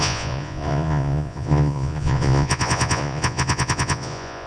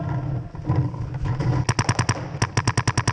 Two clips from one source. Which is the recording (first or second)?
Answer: second